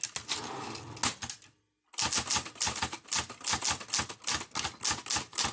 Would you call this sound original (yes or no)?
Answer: yes